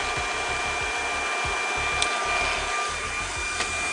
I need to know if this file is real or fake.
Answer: real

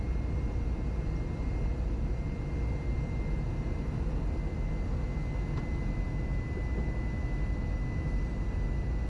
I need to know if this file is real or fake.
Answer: real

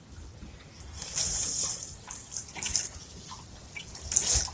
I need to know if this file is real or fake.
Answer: real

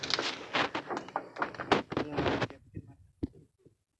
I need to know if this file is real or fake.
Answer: real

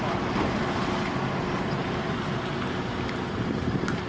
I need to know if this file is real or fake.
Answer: real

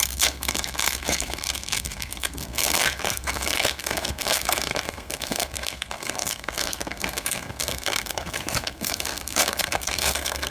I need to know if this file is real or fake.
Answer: fake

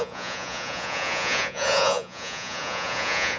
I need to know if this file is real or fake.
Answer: fake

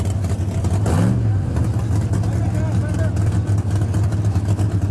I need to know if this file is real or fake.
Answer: real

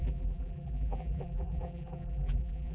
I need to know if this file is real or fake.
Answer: fake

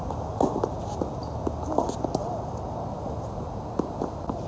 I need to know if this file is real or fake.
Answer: real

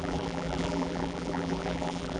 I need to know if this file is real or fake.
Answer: fake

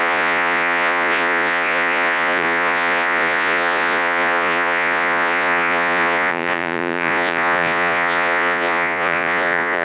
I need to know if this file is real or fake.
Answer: fake